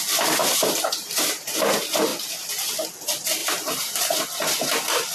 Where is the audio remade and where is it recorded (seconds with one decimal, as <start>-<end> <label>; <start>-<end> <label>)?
0.0-0.4 recorded; 0.4-1.5 remade; 1.5-3.4 recorded; 3.4-4.0 remade; 4.0-5.1 recorded

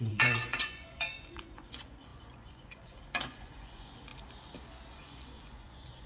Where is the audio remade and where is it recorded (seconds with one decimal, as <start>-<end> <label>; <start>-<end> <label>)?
0.0-4.1 remade; 4.1-4.9 recorded; 4.9-6.1 remade

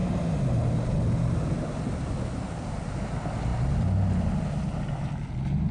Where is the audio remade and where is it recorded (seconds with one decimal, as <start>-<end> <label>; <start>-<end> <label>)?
0.0-5.7 recorded

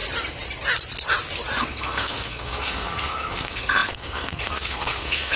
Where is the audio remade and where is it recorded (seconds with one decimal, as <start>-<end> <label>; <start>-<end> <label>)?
0.0-1.6 recorded; 1.6-5.4 remade

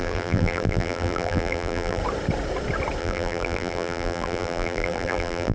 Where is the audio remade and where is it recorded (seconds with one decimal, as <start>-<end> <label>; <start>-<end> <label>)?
0.0-2.0 remade; 2.0-3.0 recorded; 3.0-5.5 remade

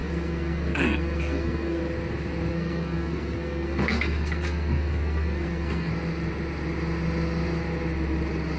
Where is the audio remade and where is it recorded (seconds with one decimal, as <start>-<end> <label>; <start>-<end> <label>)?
0.0-1.8 remade; 1.8-2.5 recorded; 2.5-5.9 remade; 5.9-8.6 recorded

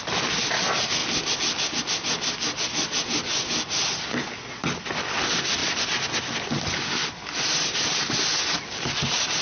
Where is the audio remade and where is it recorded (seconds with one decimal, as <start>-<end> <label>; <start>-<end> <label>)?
0.0-9.4 recorded

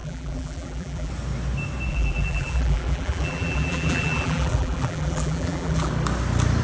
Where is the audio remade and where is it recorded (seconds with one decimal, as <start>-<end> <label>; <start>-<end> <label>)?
0.0-1.1 remade; 1.1-1.9 recorded; 1.9-5.9 remade; 5.9-6.6 recorded